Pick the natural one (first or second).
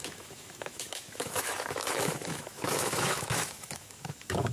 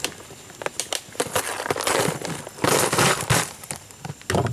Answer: second